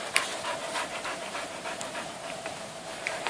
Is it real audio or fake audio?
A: fake